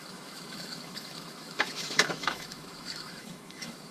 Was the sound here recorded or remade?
remade